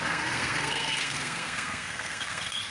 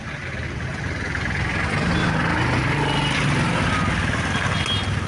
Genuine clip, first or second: second